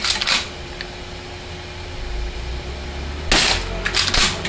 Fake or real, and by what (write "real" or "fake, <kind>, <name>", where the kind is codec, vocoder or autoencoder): real